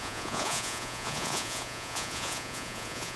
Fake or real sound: fake